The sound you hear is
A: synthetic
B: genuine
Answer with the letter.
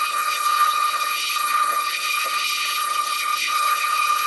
A